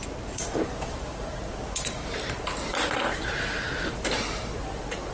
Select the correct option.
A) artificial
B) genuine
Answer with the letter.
A